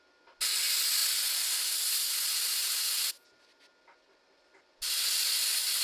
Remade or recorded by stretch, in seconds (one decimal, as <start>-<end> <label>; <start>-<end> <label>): 0.0-5.8 recorded